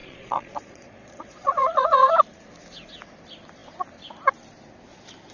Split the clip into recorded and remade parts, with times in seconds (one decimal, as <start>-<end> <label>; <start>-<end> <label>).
0.0-2.1 remade; 2.1-5.3 recorded

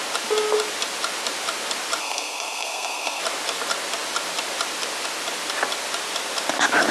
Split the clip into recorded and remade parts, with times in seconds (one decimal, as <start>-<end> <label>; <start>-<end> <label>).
0.0-2.0 recorded; 2.0-3.2 remade; 3.2-6.9 recorded